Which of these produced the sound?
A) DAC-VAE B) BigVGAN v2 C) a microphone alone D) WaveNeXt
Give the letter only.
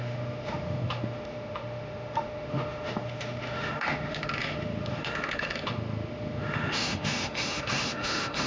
A